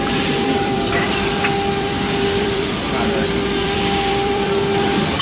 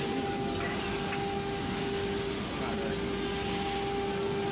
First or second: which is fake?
first